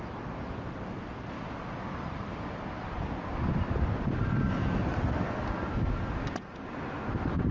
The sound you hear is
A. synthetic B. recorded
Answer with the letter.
B